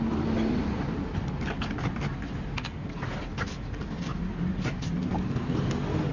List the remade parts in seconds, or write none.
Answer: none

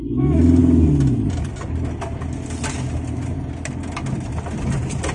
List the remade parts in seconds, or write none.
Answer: none

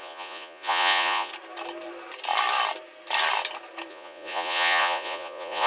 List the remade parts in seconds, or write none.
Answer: 0.0-1.3 (vocoder, Vocos); 3.9-5.7

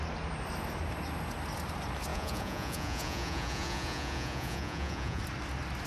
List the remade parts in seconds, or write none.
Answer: 2.1-5.2 (vocoder, Vocos)